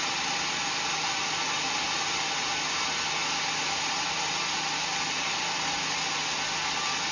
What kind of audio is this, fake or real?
real